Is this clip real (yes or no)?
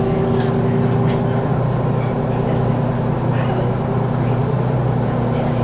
yes